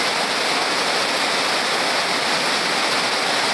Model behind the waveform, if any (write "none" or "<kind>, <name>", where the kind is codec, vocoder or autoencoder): none